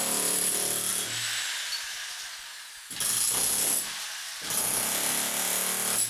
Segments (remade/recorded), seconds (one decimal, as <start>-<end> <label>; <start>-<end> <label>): 0.0-6.1 recorded